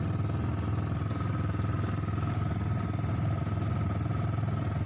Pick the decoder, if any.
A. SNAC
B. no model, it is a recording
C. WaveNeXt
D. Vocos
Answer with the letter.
B